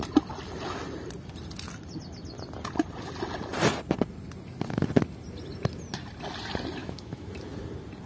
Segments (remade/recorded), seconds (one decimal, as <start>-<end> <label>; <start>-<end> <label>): 0.0-6.8 recorded; 6.8-7.3 remade; 7.3-8.1 recorded

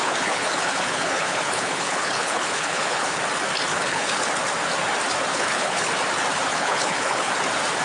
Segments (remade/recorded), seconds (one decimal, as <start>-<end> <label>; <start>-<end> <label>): 0.0-3.2 remade; 3.2-3.7 recorded; 3.7-4.3 remade; 4.3-5.3 recorded; 5.3-5.9 remade; 5.9-6.5 recorded; 6.5-7.3 remade; 7.3-7.8 recorded